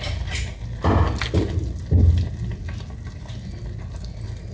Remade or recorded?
recorded